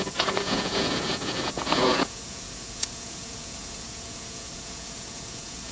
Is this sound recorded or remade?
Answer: remade